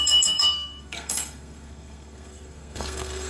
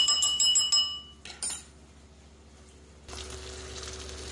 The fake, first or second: first